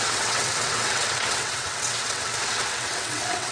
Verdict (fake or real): fake